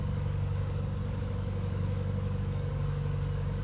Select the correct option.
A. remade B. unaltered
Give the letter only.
A